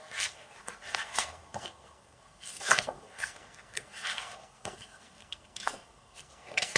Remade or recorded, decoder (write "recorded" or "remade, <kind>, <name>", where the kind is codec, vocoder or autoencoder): remade, codec, SNAC